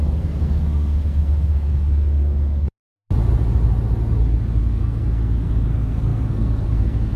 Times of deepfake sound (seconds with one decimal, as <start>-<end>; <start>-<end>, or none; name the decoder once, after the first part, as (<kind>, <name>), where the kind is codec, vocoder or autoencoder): 0.0-2.9 (codec, SNAC); 4.6-7.2